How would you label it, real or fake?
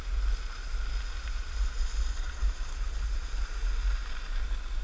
real